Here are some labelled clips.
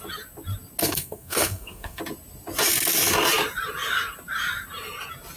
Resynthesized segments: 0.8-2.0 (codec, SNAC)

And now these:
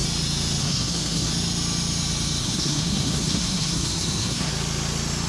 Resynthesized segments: 0.6-1.3 (codec, SNAC); 2.4-4.5